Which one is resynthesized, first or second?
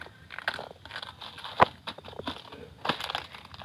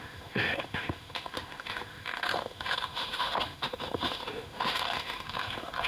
second